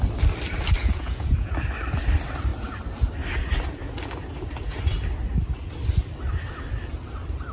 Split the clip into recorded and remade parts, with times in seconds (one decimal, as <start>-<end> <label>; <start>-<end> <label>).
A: 0.0-0.8 recorded; 0.8-1.5 remade; 1.5-7.5 recorded